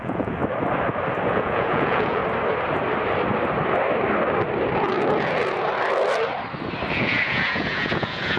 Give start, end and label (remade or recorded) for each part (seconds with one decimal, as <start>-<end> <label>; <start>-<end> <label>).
0.0-0.4 remade; 0.4-1.2 recorded; 1.2-2.2 remade; 2.2-6.9 recorded; 6.9-8.4 remade

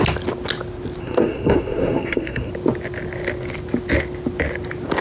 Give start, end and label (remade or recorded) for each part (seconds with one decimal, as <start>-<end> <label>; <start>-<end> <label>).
0.0-1.0 recorded; 1.0-2.5 remade; 2.5-5.0 recorded

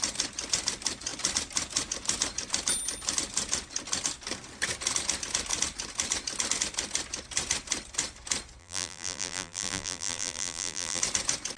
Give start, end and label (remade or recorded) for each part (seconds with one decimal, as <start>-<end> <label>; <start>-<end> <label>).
0.0-8.6 recorded; 8.6-11.0 remade; 11.0-11.6 recorded

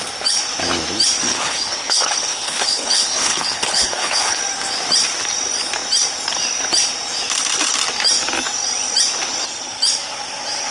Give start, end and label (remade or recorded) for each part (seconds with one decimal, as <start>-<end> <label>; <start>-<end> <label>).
0.0-1.3 recorded; 1.3-4.4 remade; 4.4-10.7 recorded

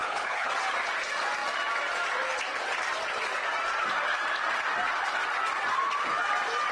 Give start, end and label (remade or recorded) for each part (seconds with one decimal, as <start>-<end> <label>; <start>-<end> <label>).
0.0-0.5 remade; 0.5-6.7 recorded

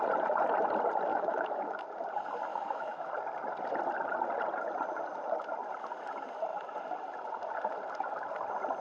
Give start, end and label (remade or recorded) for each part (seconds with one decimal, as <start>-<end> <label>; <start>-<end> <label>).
0.0-1.1 recorded; 1.1-1.8 remade; 1.8-2.5 recorded; 2.5-3.1 remade; 3.1-8.8 recorded

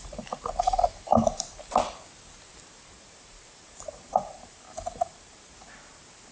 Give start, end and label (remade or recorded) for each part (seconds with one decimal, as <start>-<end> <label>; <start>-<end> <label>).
0.0-1.1 remade; 1.1-2.9 recorded; 2.9-6.3 remade

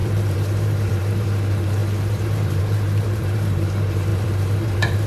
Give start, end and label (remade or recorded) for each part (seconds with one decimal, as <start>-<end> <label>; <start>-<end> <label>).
0.0-5.1 remade